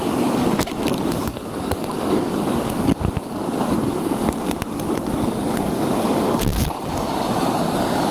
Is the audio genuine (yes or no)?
no